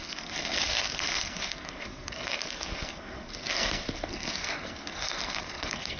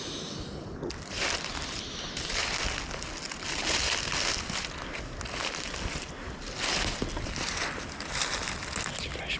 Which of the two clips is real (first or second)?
second